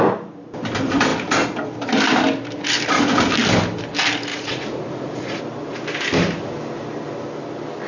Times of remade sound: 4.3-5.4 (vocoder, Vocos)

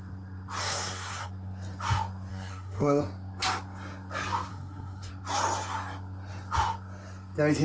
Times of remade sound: 0.6-1.3 (codec, SNAC); 2.3-3.0; 4.5-5.1

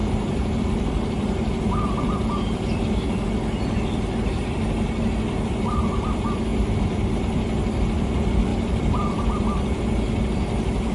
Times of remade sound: 0.0-2.8 (vocoder, BigVGAN v2); 6.5-7.8; 8.5-9.4

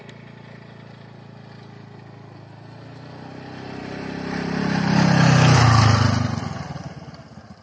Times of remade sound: none

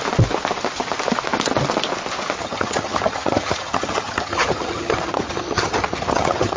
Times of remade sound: 2.4-6.6 (vocoder, HiFi-GAN)

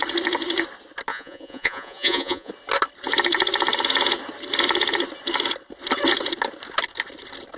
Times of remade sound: 1.1-2.5 (vocoder, Vocos)

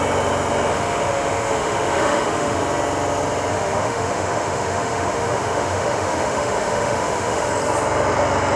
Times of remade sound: 0.7-2.6 (autoencoder, DAC-VAE); 3.5-7.5